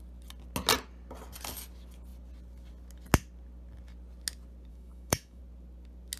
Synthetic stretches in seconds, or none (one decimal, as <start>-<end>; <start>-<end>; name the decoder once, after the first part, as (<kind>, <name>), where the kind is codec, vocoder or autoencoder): 4.7-5.4 (autoencoder, DAC-VAE)